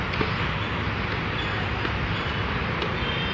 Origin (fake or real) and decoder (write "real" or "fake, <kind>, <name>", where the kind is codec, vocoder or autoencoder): real